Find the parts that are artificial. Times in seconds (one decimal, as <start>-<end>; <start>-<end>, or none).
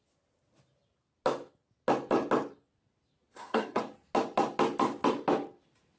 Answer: 3.3-3.8